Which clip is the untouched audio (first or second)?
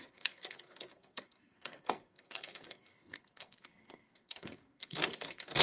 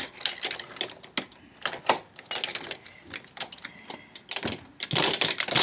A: second